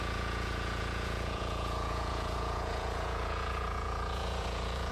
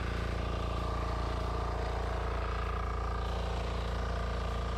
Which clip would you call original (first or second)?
second